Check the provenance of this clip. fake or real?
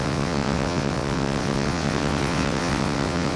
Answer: fake